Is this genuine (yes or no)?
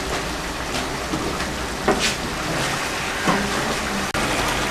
yes